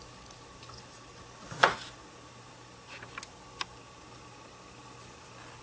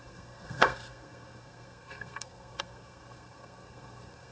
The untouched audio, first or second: first